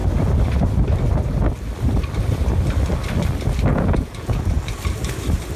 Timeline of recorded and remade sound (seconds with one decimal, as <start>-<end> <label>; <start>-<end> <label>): 0.0-3.7 recorded; 3.7-4.4 remade; 4.4-5.6 recorded